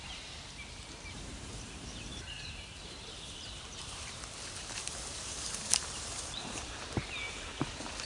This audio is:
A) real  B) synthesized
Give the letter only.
B